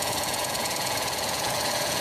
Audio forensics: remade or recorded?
remade